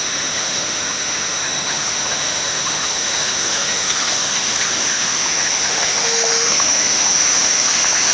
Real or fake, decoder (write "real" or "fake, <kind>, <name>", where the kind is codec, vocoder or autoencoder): fake, autoencoder, DAC-VAE